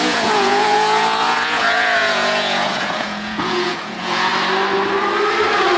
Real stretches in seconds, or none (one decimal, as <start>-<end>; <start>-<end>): 4.3-5.8